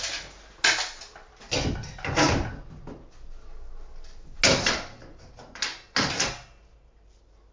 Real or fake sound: real